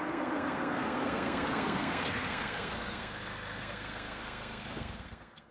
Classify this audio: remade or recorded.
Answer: remade